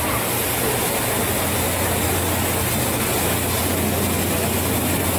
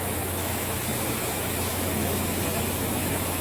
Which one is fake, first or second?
second